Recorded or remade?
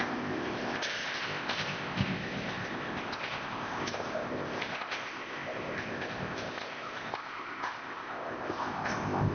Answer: remade